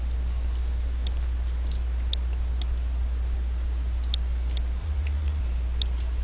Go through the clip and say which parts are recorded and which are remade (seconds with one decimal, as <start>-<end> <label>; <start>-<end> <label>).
0.0-4.8 recorded; 4.8-5.4 remade; 5.4-6.2 recorded